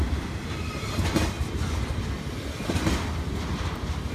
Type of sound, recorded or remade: recorded